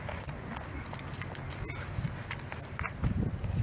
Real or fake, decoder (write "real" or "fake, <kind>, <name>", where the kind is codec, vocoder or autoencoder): real